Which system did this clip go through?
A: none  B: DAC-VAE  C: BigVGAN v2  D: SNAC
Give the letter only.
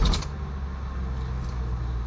A